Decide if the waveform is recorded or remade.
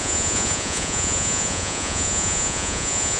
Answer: remade